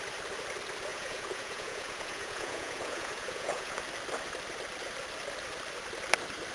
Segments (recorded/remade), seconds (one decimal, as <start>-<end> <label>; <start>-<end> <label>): 0.0-0.9 recorded; 0.9-3.8 remade; 3.8-6.5 recorded